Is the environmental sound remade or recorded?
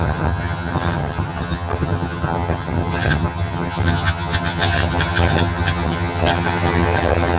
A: remade